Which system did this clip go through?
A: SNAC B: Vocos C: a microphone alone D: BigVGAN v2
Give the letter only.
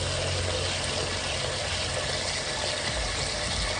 C